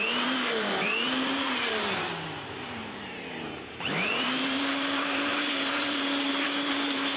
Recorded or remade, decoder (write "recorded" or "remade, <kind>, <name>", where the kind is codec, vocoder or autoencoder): remade, vocoder, BigVGAN v2